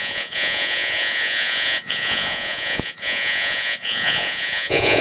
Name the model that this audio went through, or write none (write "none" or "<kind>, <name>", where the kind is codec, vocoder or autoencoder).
vocoder, Vocos